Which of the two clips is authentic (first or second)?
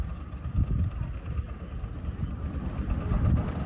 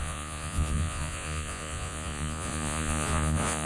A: first